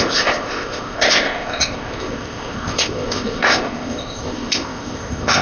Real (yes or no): no